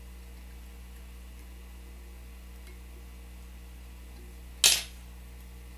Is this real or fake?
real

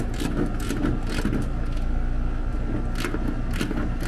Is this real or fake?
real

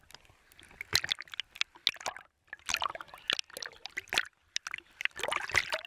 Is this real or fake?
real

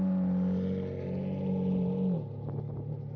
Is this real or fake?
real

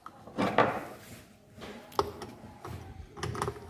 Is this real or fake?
real